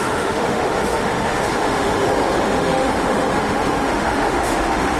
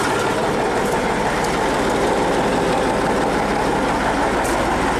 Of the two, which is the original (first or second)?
second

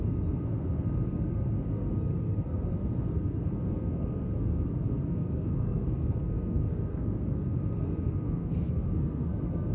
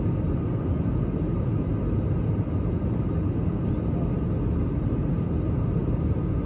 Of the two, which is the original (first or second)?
second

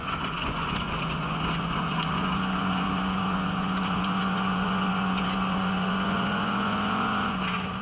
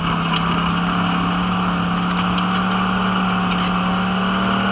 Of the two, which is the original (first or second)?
second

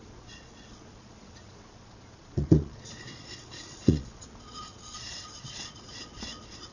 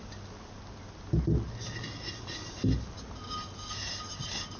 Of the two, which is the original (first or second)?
second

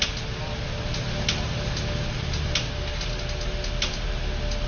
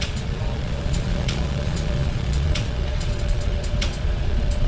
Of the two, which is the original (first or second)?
first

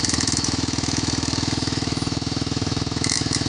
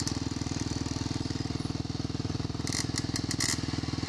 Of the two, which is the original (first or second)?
second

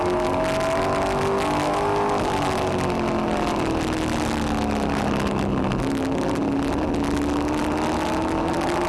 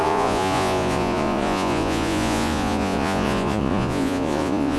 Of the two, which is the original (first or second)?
first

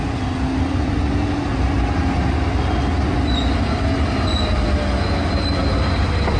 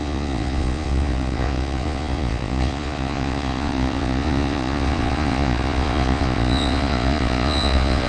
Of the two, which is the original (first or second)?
first